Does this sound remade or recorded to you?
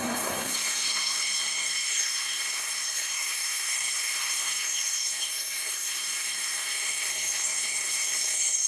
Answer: remade